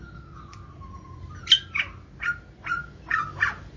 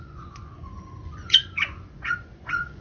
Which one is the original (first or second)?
first